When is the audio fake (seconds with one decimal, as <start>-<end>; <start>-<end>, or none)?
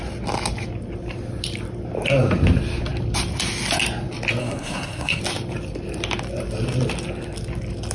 4.4-5.2